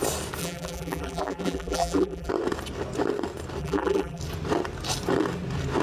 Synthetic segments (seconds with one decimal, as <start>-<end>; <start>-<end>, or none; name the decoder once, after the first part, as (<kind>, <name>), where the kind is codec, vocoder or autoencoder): 0.4-2.3 (vocoder, BigVGAN v2); 3.6-4.2

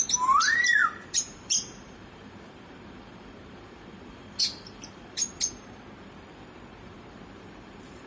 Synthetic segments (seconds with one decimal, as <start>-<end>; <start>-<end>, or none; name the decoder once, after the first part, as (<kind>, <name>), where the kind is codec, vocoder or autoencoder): 0.0-5.2 (vocoder, BigVGAN v2); 6.0-8.1

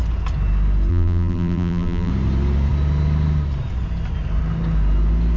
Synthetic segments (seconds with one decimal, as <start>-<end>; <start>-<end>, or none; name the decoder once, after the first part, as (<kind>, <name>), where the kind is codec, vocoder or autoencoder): 0.9-2.1 (vocoder, BigVGAN v2)

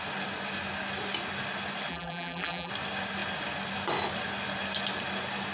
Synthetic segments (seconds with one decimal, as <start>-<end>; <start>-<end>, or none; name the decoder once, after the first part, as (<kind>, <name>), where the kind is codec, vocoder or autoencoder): 1.9-2.7 (vocoder, BigVGAN v2)

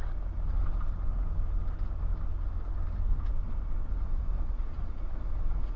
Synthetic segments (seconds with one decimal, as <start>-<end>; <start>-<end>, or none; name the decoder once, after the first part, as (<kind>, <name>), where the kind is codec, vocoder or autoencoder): 3.8-5.0 (vocoder, BigVGAN v2)

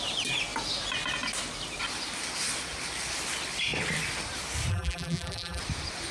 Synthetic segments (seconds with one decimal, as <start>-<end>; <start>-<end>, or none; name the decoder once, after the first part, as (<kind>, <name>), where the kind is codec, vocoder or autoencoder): 4.7-5.6 (vocoder, BigVGAN v2)